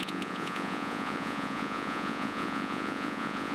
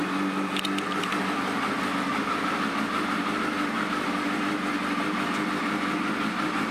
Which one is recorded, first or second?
second